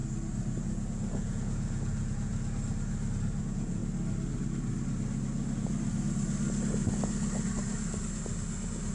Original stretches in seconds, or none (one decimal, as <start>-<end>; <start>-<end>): 0.0-0.6; 2.3-3.4; 3.8-8.9

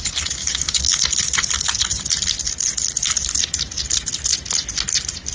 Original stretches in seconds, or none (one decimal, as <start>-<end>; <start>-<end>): 0.0-0.4; 1.0-5.3

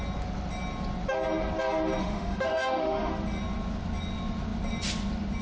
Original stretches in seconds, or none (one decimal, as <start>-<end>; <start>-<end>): 0.0-2.0; 3.1-5.4

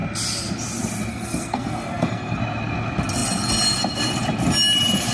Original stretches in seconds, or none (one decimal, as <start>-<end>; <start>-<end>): 0.0-1.1; 2.4-5.1

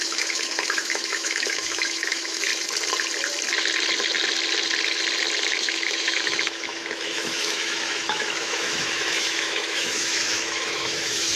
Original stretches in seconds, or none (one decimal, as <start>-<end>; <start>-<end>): 2.5-5.5

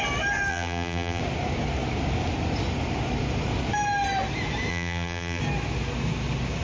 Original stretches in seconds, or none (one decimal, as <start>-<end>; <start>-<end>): 0.0-0.5; 1.2-4.7; 5.4-6.6

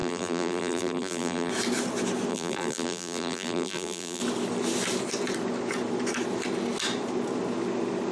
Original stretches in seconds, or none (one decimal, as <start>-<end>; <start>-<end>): 1.5-2.3; 4.2-8.1